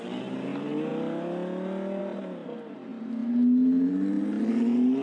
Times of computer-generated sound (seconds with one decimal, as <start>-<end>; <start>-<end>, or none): none